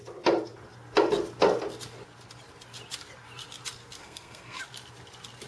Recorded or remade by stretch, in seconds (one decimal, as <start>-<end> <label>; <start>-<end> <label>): 0.0-4.0 recorded; 4.0-4.6 remade; 4.6-5.5 recorded

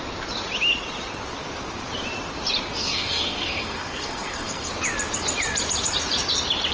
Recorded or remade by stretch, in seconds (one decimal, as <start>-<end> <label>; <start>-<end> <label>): 0.0-2.8 recorded; 2.8-4.7 remade; 4.7-6.7 recorded

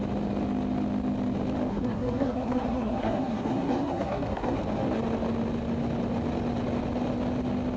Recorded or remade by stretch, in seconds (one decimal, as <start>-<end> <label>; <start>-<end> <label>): 0.0-1.7 recorded; 1.7-4.6 remade; 4.6-7.8 recorded